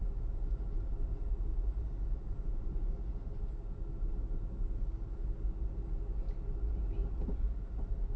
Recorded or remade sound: recorded